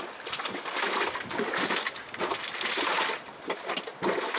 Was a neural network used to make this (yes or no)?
no